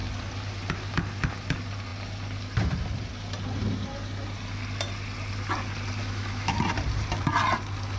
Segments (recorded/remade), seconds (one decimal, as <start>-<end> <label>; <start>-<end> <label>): 0.0-6.0 recorded; 6.0-6.6 remade; 6.6-8.0 recorded